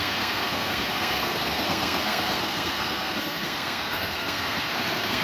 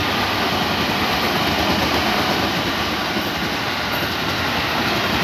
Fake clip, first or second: first